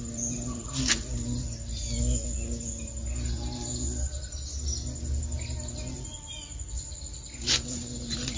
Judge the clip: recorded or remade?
recorded